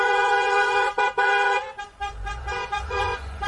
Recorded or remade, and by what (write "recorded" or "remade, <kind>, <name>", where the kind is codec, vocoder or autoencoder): remade, vocoder, Vocos